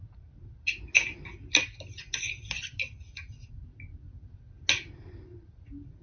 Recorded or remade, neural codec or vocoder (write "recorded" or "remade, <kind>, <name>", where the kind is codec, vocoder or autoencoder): recorded